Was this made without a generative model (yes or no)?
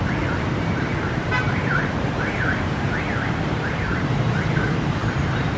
no